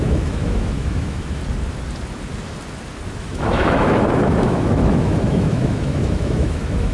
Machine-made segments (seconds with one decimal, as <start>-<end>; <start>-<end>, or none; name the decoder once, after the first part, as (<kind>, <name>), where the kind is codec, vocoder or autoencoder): 0.0-1.4 (autoencoder, DAC-VAE); 3.2-6.9